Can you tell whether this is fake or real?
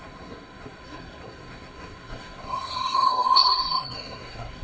fake